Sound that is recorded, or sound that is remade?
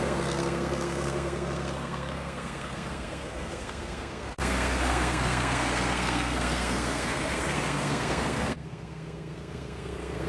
remade